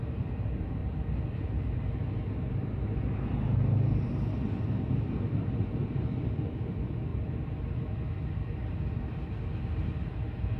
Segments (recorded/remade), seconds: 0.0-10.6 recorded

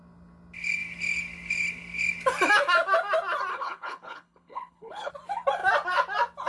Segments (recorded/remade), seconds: 0.0-3.5 recorded; 3.5-5.1 remade; 5.1-6.5 recorded

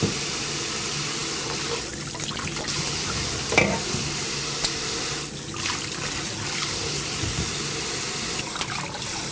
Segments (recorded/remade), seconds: 0.0-9.3 recorded

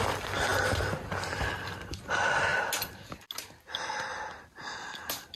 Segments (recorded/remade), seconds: 0.0-5.4 recorded

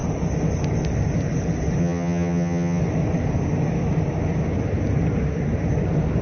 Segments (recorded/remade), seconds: 0.0-1.8 recorded; 1.8-2.8 remade; 2.8-6.2 recorded

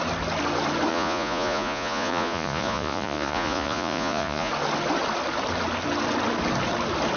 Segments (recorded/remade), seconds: 0.0-0.9 recorded; 0.9-4.5 remade; 4.5-7.2 recorded

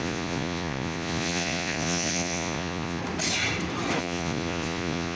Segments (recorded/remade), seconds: 0.0-3.0 remade; 3.0-4.0 recorded; 4.0-5.2 remade

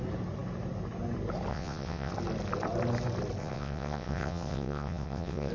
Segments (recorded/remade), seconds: 0.0-1.5 recorded; 1.5-2.1 remade; 2.1-3.4 recorded; 3.4-5.5 remade